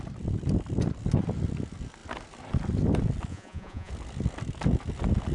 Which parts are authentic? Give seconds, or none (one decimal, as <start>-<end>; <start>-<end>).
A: 0.0-3.3; 3.9-5.3